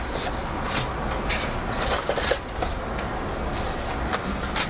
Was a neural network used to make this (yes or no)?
no